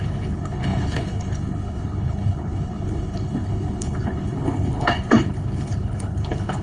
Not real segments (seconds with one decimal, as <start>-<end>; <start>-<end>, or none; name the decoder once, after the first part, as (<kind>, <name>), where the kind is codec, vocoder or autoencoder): 0.0-6.6 (codec, HILCodec)